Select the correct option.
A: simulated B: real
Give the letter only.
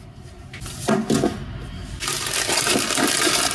B